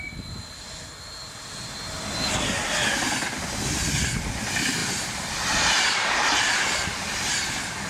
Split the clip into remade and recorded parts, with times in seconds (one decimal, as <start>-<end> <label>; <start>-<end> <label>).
0.0-4.8 recorded; 4.8-7.3 remade; 7.3-7.9 recorded

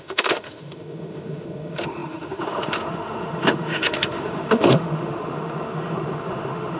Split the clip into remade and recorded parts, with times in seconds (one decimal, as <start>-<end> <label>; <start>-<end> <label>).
0.0-6.8 remade

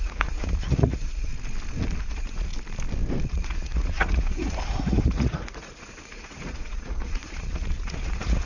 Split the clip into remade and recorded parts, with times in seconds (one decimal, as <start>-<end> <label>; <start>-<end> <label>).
0.0-1.3 remade; 1.3-2.0 recorded; 2.0-2.5 remade; 2.5-3.3 recorded; 3.3-8.5 remade

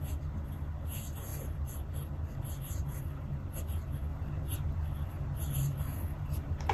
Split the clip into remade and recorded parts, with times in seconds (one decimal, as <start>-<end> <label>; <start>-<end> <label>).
0.0-6.7 recorded

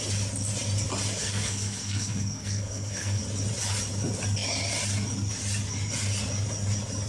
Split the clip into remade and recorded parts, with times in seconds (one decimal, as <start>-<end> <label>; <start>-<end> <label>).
0.0-1.2 recorded; 1.2-3.2 remade; 3.2-7.1 recorded

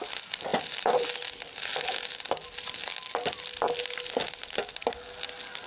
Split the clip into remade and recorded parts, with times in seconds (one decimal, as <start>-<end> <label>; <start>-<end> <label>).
0.0-5.7 recorded

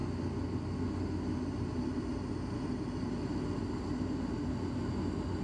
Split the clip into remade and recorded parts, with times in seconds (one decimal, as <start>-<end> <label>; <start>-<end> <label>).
0.0-5.4 recorded

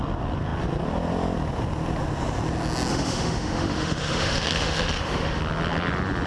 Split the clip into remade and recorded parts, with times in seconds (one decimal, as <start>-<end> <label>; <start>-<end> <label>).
0.0-2.9 recorded; 2.9-5.4 remade; 5.4-6.3 recorded